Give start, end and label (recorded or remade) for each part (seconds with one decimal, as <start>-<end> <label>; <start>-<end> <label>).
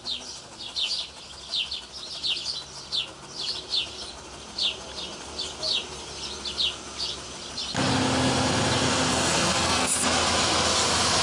0.0-9.1 recorded; 9.1-9.9 remade; 9.9-11.2 recorded